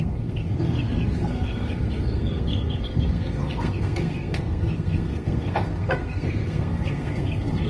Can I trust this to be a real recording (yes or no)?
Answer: no